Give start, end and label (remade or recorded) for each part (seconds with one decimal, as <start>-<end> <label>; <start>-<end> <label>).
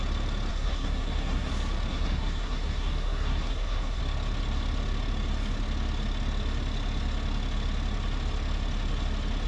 0.0-0.5 recorded; 0.5-1.5 remade; 1.5-1.9 recorded; 1.9-4.0 remade; 4.0-9.5 recorded